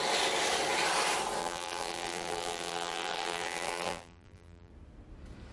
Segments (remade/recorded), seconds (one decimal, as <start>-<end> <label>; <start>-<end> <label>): 0.0-1.4 recorded; 1.4-4.7 remade; 4.7-5.5 recorded